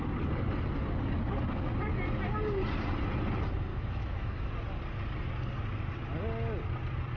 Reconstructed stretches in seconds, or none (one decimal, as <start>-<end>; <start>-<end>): 3.7-4.5